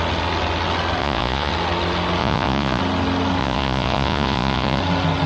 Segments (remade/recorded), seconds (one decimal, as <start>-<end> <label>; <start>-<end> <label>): 0.0-1.0 recorded; 1.0-1.5 remade; 1.5-2.2 recorded; 2.2-2.8 remade; 2.8-3.4 recorded; 3.4-4.8 remade; 4.8-5.3 recorded